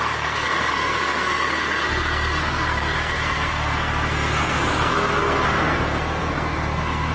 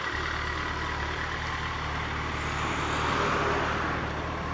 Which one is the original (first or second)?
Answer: second